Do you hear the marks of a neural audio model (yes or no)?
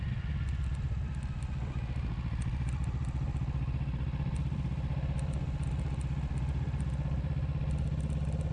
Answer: no